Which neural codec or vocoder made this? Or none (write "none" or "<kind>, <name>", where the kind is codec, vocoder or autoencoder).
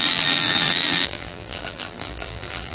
vocoder, BigVGAN v2